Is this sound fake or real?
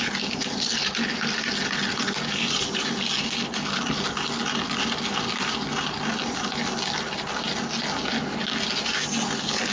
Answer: real